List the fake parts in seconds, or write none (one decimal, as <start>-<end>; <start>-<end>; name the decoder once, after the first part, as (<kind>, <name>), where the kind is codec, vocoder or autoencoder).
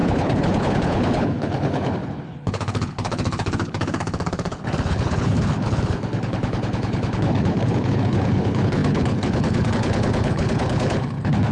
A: 0.0-11.5 (codec, HILCodec)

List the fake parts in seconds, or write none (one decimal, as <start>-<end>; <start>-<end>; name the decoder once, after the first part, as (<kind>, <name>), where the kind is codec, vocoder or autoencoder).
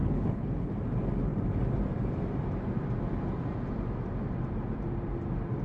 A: 0.0-0.7 (codec, HILCodec)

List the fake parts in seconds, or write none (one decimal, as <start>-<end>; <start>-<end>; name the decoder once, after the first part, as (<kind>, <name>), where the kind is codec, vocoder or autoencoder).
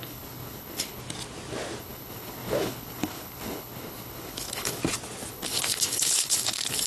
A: 0.0-1.0 (codec, HILCodec); 1.8-4.8; 5.3-6.9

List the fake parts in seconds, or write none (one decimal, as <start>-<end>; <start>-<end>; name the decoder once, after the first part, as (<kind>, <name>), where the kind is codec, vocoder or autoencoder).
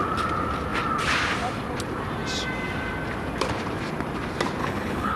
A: 4.6-5.2 (codec, HILCodec)